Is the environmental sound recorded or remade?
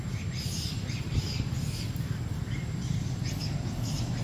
recorded